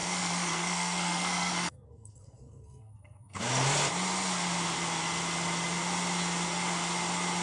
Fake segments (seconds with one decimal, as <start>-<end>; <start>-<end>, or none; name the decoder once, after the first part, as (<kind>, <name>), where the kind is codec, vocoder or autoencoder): 0.0-3.4 (codec, SNAC)